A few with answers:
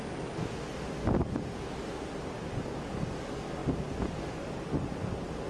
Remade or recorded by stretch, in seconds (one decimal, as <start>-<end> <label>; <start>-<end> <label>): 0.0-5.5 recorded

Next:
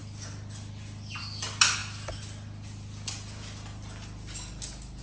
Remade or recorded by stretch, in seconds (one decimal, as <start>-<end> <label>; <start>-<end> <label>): 0.0-5.0 recorded

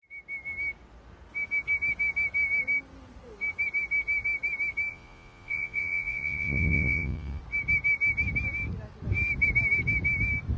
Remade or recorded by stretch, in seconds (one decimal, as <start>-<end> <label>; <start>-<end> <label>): 0.0-4.9 recorded; 4.9-7.4 remade; 7.4-10.6 recorded

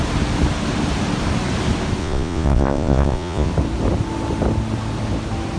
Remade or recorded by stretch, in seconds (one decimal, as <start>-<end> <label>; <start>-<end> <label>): 0.0-2.0 recorded; 2.0-3.5 remade; 3.5-5.6 recorded

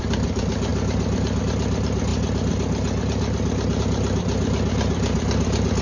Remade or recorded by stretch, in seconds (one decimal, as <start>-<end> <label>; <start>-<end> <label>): 0.0-5.8 recorded

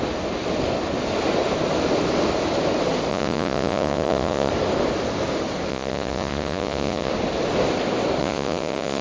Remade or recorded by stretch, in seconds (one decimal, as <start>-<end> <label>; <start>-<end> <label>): 0.0-3.1 recorded; 3.1-4.5 remade; 4.5-5.7 recorded; 5.7-7.1 remade; 7.1-8.2 recorded; 8.2-9.0 remade

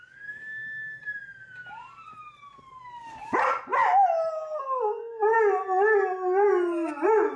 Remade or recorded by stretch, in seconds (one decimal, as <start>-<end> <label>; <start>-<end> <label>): 0.0-7.4 recorded

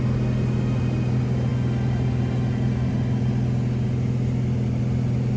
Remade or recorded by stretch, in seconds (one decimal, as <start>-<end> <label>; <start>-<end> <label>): 0.0-5.4 recorded